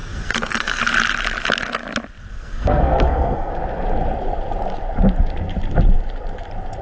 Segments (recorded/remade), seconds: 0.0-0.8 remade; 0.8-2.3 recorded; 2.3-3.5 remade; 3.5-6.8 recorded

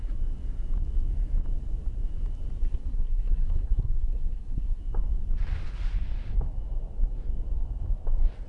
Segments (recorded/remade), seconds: 0.0-2.6 recorded; 2.6-4.8 remade; 4.8-8.5 recorded

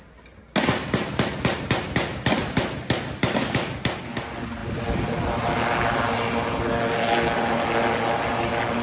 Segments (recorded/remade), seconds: 0.0-8.8 recorded